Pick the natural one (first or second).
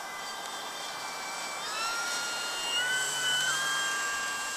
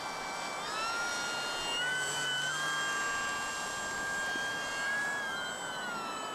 second